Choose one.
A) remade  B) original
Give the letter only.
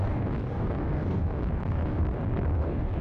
A